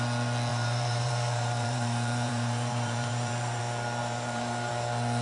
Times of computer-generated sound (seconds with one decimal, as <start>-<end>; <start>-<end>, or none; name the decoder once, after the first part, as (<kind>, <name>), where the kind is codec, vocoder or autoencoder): 0.5-3.6 (vocoder, BigVGAN v2); 4.0-4.7